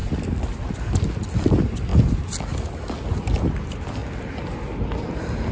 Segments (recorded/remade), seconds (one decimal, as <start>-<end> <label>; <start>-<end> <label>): 0.0-5.5 recorded